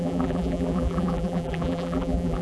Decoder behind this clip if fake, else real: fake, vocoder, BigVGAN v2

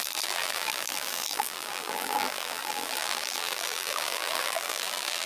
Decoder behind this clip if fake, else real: fake, vocoder, BigVGAN v2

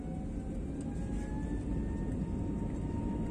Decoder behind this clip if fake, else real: real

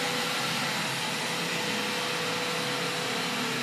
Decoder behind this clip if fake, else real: real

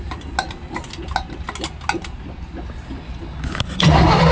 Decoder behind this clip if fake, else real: real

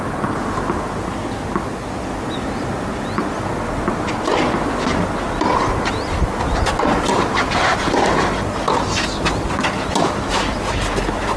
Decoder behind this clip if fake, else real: real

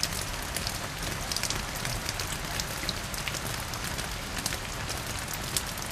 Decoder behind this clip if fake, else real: real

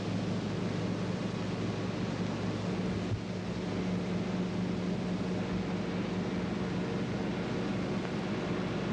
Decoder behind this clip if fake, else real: real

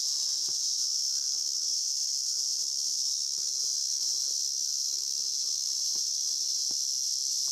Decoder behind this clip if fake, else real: real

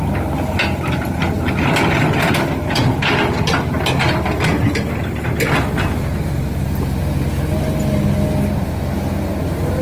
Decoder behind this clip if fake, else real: real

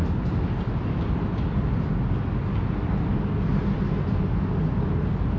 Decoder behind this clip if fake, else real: real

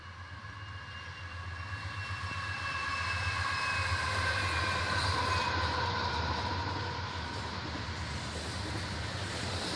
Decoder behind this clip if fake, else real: real